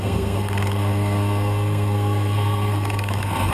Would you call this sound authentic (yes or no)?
no